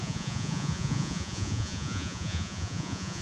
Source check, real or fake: fake